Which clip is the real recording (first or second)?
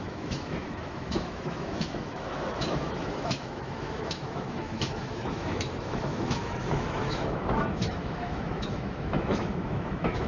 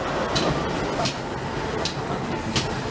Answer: second